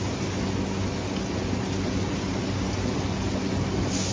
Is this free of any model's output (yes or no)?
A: yes